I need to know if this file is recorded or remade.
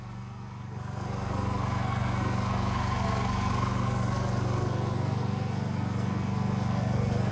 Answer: remade